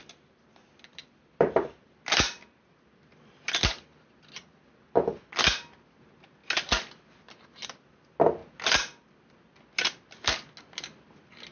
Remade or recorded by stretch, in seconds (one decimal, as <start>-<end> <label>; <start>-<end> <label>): 0.0-0.9 recorded; 0.9-1.8 remade; 1.8-11.5 recorded